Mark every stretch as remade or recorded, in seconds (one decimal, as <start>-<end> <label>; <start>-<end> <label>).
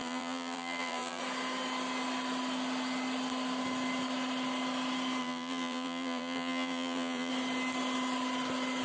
0.0-1.2 remade; 1.2-5.2 recorded; 5.2-7.3 remade; 7.3-8.8 recorded